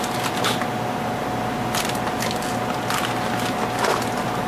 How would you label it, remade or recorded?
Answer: recorded